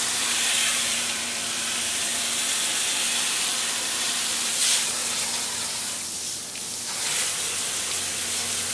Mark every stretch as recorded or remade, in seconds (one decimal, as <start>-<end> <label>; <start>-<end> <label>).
0.0-2.1 remade; 2.1-3.9 recorded; 3.9-5.0 remade; 5.0-8.7 recorded